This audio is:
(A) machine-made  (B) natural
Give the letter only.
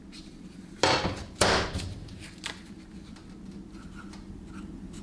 B